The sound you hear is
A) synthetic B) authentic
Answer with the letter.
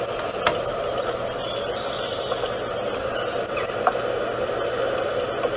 B